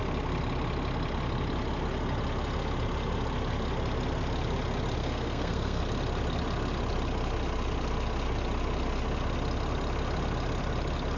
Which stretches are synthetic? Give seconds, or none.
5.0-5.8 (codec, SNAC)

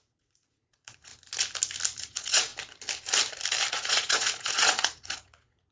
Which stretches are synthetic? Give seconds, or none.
0.0-1.1 (vocoder, Vocos); 2.0-2.5; 3.7-5.7

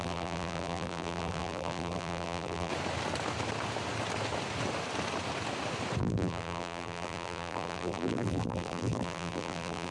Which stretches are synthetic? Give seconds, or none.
0.0-2.7 (vocoder, BigVGAN v2); 6.0-9.9